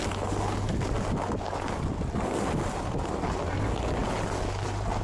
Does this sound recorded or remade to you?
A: recorded